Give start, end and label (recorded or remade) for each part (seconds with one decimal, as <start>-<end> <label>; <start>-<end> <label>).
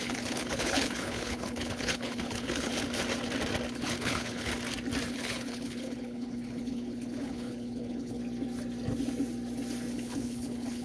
0.0-2.7 remade; 2.7-3.8 recorded; 3.8-4.5 remade; 4.5-5.1 recorded; 5.1-8.2 remade; 8.2-9.9 recorded; 9.9-10.8 remade